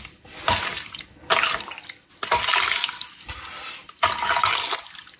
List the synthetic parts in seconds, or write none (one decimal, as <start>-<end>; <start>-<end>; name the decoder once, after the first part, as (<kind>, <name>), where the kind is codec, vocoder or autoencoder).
1.3-4.1 (vocoder, BigVGAN v2)